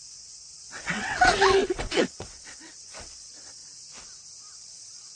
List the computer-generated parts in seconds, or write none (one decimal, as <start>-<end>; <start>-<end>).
0.0-3.6; 4.4-5.2